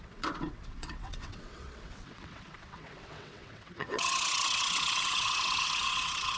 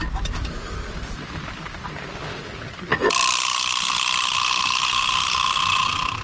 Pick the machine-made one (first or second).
first